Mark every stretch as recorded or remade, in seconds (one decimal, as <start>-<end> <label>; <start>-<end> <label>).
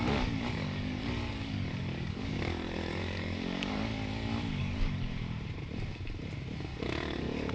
0.0-3.9 remade; 3.9-4.6 recorded; 4.6-5.2 remade; 5.2-6.8 recorded; 6.8-7.5 remade